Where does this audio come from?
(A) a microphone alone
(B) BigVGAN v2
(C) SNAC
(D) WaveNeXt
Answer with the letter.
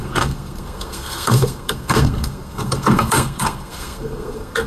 C